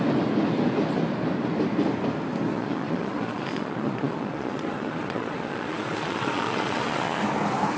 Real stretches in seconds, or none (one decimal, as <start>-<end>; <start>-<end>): 0.0-2.5; 7.2-7.8